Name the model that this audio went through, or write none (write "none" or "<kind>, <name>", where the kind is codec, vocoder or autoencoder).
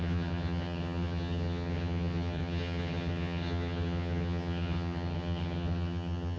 vocoder, HiFi-GAN